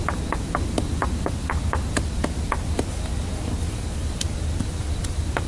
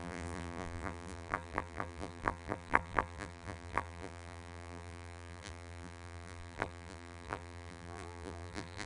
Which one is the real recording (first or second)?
first